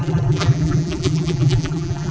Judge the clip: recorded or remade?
remade